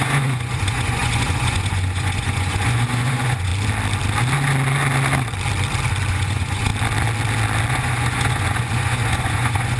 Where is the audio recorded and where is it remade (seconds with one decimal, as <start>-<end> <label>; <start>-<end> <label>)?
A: 0.0-3.5 remade; 3.5-6.1 recorded; 6.1-6.7 remade; 6.7-7.7 recorded; 7.7-9.8 remade